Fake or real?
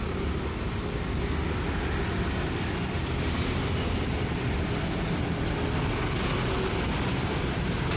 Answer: real